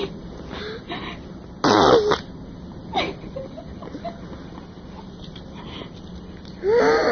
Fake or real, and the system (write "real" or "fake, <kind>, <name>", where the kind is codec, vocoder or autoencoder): real